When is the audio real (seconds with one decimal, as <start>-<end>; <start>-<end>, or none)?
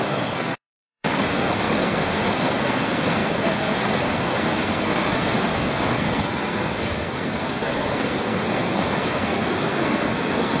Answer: none